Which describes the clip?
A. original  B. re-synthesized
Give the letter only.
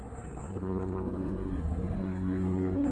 B